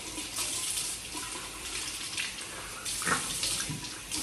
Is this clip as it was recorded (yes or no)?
no